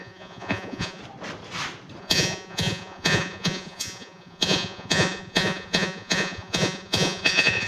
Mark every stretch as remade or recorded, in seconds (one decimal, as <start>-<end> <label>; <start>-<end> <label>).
0.0-1.0 remade; 1.0-2.0 recorded; 2.0-7.7 remade